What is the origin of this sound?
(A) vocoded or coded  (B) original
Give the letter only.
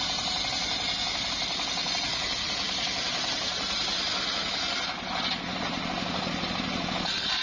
B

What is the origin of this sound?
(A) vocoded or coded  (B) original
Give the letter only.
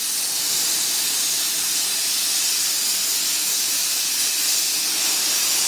B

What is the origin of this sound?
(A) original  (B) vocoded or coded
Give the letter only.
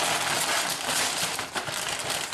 A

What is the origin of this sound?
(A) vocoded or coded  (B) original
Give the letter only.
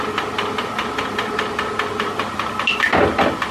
B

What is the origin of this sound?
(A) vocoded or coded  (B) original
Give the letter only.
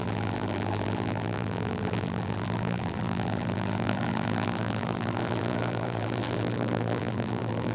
A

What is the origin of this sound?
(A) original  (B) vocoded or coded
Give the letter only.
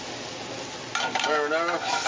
A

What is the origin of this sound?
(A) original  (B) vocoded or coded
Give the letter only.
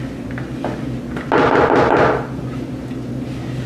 A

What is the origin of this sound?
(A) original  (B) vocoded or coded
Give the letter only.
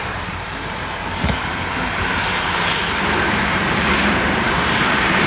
B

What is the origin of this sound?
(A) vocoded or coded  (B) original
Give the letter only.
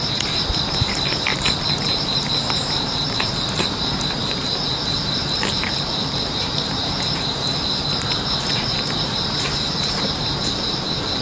A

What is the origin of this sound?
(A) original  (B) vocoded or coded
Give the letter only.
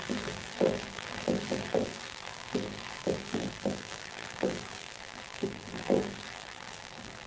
B